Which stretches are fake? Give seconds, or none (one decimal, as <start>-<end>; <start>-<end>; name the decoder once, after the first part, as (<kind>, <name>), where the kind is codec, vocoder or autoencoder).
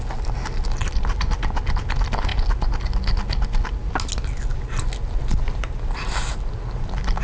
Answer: none